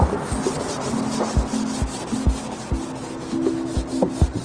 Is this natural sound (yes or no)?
yes